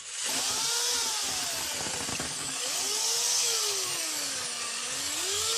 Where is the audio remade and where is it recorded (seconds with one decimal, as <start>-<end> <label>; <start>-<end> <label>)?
0.0-2.1 recorded; 2.1-5.6 remade

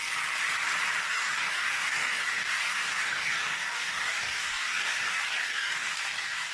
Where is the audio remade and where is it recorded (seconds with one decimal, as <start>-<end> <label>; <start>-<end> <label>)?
0.0-1.0 recorded; 1.0-6.5 remade

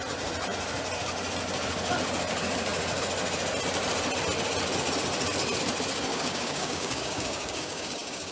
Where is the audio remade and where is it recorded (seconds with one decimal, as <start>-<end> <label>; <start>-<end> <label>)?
0.0-6.1 recorded; 6.1-8.3 remade

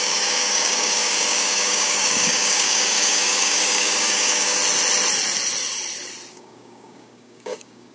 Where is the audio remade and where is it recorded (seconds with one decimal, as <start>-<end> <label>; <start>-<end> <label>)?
0.0-4.6 remade; 4.6-6.3 recorded; 6.3-7.9 remade

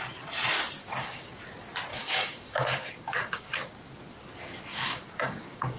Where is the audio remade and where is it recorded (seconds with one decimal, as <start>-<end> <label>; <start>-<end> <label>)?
0.0-0.8 recorded; 0.8-1.3 remade; 1.3-1.9 recorded; 1.9-3.7 remade; 3.7-4.7 recorded; 4.7-5.8 remade

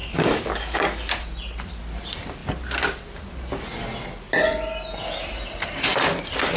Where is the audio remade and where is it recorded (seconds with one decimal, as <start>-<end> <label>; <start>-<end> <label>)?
0.0-1.1 remade; 1.1-6.6 recorded

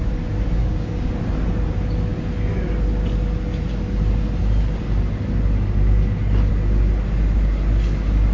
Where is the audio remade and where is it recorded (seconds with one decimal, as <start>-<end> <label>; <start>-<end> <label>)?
0.0-0.6 recorded; 0.6-1.1 remade; 1.1-8.3 recorded